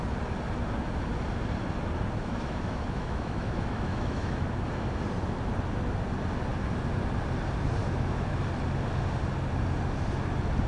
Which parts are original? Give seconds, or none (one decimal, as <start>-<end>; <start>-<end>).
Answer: 0.0-2.2; 4.4-7.8; 8.4-10.7